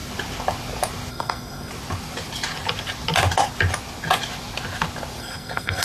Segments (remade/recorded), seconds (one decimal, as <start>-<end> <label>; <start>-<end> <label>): 0.0-1.1 recorded; 1.1-1.7 remade; 1.7-5.2 recorded; 5.2-5.8 remade